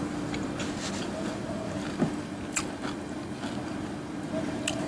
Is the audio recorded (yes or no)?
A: yes